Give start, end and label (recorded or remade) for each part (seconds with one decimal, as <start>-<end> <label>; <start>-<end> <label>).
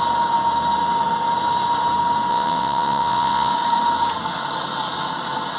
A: 0.0-2.3 recorded; 2.3-3.5 remade; 3.5-5.6 recorded